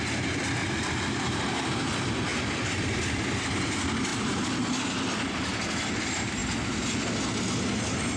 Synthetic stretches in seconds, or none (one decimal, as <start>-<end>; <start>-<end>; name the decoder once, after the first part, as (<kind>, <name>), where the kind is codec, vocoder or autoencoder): 0.6-1.7 (vocoder, BigVGAN v2); 2.3-3.5; 4.1-4.7